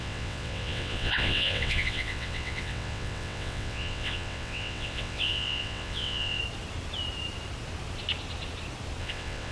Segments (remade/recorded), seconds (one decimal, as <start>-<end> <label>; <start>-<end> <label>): 0.0-6.4 remade; 6.4-9.0 recorded; 9.0-9.5 remade